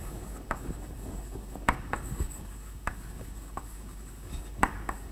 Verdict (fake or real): fake